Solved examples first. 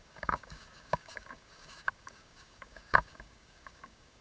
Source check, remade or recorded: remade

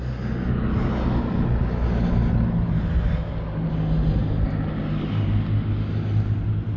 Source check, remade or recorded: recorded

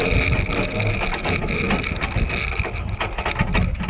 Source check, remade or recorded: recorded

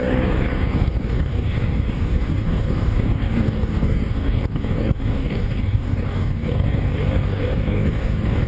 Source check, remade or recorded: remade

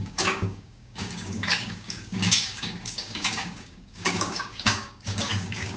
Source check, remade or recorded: remade